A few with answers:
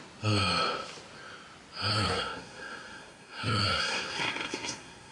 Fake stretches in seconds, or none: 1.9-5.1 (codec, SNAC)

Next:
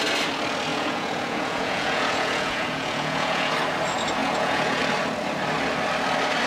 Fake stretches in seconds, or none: 0.7-3.5 (vocoder, Vocos); 4.2-4.8

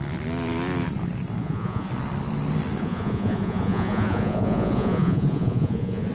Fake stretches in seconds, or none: 1.4-1.9 (vocoder, Vocos); 2.8-6.1

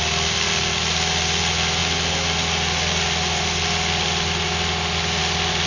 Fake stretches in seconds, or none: none

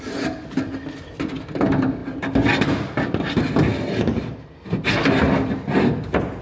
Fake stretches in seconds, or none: none

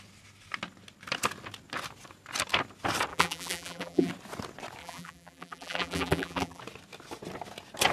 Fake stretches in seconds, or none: 3.1-4.1 (vocoder, BigVGAN v2); 4.8-6.6